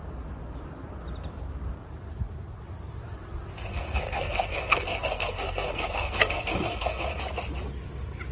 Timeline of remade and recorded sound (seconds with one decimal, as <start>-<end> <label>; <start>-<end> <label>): 0.0-3.7 recorded; 3.7-7.2 remade; 7.2-8.3 recorded